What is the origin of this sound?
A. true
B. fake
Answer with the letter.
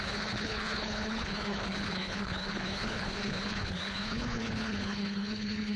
B